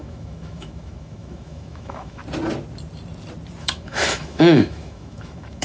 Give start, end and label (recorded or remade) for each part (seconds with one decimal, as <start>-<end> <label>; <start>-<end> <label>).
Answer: 0.0-2.2 remade; 2.2-3.6 recorded; 3.6-5.6 remade